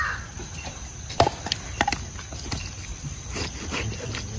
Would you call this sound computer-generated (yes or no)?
no